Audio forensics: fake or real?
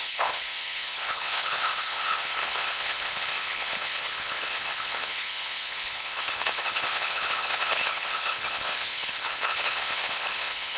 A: fake